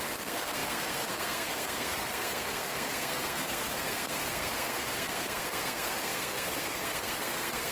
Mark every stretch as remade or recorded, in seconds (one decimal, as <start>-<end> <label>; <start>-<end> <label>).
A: 0.0-7.7 remade